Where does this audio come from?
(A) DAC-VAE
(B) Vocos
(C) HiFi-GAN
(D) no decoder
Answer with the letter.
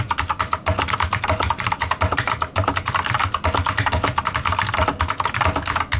D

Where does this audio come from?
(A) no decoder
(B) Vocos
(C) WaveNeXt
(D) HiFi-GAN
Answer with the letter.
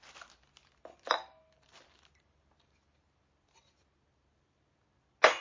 A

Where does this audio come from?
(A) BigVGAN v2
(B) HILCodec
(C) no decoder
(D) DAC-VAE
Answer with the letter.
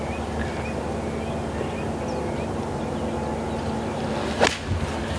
C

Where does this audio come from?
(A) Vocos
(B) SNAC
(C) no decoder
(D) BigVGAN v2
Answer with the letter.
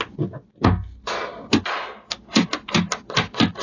C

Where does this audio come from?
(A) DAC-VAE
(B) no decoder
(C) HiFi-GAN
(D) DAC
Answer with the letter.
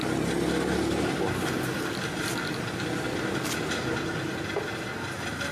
B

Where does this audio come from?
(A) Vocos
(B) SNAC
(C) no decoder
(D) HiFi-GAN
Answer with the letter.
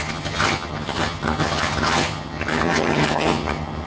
D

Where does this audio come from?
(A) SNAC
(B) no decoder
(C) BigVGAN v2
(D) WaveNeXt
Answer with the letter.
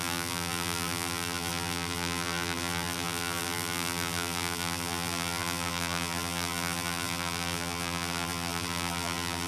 C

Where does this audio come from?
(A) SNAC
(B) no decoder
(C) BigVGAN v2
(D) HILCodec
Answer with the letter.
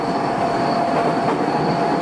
B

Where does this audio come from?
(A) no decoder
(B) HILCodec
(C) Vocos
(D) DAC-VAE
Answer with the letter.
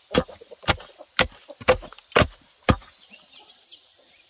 A